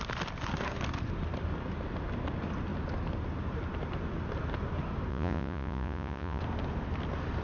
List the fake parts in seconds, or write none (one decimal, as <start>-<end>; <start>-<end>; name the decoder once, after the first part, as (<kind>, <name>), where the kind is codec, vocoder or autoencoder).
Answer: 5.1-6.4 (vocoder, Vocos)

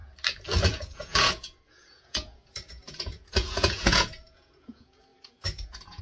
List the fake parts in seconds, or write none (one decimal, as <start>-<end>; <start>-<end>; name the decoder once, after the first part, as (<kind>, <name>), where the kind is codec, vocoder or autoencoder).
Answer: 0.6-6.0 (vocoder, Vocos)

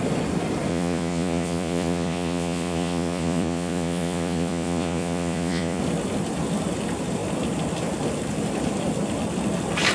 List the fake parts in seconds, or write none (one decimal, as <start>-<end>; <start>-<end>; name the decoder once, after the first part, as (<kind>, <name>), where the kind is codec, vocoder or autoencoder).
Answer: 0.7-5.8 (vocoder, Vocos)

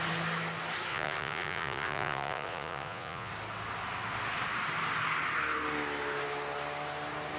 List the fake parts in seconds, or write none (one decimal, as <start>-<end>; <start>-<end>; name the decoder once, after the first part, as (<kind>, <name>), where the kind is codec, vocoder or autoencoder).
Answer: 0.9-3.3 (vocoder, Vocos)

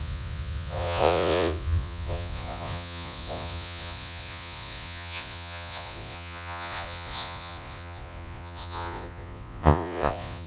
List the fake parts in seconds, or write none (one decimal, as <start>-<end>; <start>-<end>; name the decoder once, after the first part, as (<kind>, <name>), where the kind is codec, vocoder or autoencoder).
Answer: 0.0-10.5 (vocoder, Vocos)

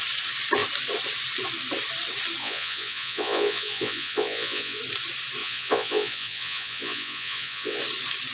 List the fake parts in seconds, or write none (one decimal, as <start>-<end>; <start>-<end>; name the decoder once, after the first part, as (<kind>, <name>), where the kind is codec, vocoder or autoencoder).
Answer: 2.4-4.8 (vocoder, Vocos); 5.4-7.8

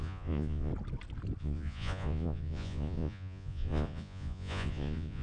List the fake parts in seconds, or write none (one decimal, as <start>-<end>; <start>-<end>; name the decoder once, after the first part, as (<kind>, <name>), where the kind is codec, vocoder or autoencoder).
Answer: 0.0-0.7 (vocoder, Vocos); 1.4-5.2

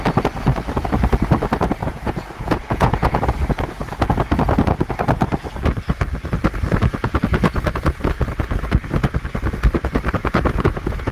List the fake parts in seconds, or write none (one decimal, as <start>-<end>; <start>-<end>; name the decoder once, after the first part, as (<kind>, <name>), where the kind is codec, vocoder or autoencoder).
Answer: 1.8-3.2 (vocoder, Vocos); 10.2-11.1